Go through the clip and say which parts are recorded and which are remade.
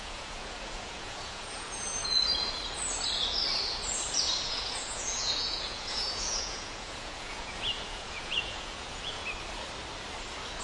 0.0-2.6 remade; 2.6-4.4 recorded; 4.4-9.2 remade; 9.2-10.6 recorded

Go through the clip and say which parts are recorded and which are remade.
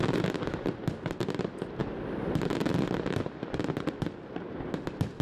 0.0-5.2 recorded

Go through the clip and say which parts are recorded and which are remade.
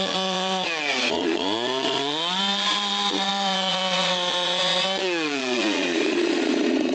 0.0-6.9 remade